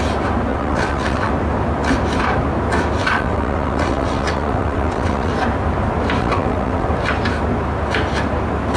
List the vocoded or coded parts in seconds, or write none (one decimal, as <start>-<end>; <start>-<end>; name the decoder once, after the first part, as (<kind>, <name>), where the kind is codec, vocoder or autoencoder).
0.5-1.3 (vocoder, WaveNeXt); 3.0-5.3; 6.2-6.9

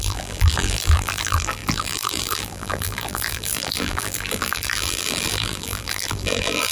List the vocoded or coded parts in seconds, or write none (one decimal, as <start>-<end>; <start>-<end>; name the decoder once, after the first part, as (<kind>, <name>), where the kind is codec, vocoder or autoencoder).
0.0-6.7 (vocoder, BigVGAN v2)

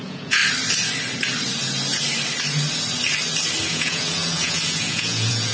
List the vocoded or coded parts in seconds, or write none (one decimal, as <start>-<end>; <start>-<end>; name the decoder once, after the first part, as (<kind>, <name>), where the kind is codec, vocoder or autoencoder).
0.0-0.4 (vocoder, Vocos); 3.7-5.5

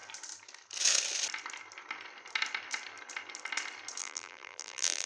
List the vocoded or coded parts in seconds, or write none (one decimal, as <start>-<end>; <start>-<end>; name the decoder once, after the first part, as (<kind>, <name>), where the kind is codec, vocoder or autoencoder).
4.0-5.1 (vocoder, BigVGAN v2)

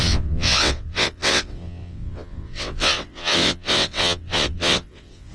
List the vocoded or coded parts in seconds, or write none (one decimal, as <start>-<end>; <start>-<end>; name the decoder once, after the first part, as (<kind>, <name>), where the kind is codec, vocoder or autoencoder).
0.0-5.3 (vocoder, WaveNeXt)

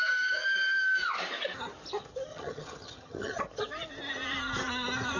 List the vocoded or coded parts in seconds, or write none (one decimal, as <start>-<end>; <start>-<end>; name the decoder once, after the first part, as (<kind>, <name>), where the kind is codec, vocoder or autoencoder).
2.3-3.4 (vocoder, HiFi-GAN)

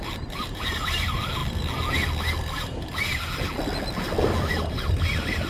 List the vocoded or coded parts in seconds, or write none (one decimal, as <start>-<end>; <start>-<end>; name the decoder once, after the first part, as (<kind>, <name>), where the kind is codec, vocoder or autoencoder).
0.0-1.4 (vocoder, BigVGAN v2); 4.7-5.5